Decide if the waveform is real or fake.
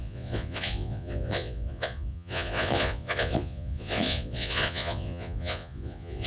fake